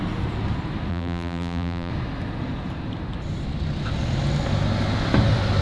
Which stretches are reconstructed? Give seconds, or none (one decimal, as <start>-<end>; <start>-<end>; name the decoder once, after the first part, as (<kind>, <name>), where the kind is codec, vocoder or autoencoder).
0.9-1.9 (vocoder, BigVGAN v2)

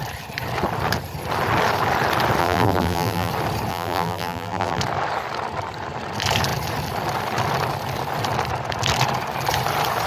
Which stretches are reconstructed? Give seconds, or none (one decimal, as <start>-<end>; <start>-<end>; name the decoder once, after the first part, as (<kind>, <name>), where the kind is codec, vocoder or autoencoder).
2.4-3.3 (vocoder, BigVGAN v2); 3.7-4.8